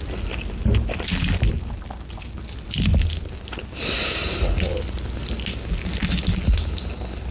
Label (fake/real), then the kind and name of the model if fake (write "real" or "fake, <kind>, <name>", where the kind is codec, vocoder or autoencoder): real